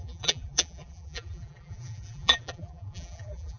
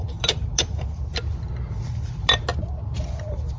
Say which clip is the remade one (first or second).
first